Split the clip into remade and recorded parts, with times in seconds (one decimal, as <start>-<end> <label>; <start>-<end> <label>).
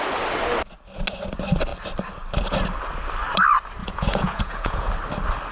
0.0-3.8 recorded; 3.8-4.9 remade; 4.9-5.5 recorded